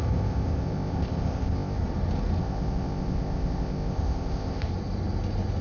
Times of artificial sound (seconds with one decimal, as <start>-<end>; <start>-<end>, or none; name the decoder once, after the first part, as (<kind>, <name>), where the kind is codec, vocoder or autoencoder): 0.0-1.8 (codec, ZipCodec); 2.4-4.7